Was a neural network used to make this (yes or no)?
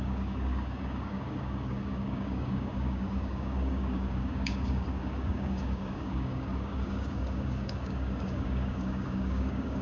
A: yes